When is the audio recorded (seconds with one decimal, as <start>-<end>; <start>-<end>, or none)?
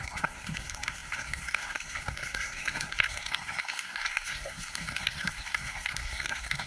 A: none